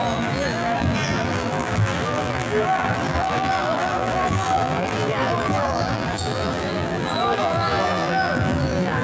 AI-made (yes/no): yes